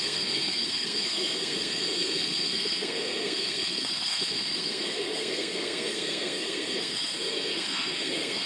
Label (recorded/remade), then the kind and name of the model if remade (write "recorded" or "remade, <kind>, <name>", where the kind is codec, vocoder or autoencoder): remade, codec, SNAC